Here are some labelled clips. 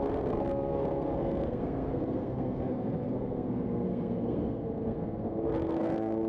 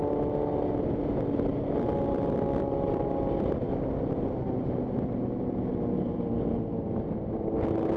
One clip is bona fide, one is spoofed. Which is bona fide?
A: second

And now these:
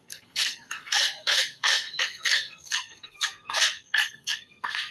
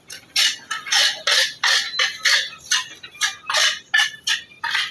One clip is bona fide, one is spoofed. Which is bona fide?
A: second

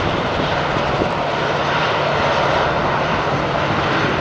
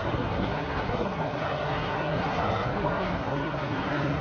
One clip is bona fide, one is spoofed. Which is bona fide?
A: first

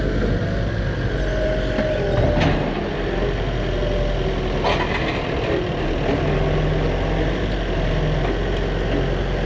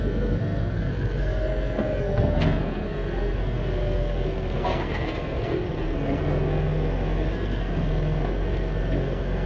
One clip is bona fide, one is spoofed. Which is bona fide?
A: first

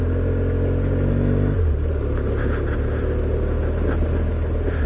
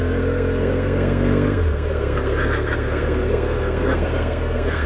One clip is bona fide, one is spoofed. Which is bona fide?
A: first